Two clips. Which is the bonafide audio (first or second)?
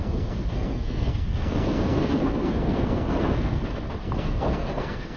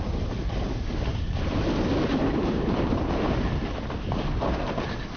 second